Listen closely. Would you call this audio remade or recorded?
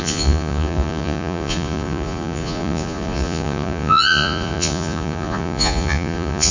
remade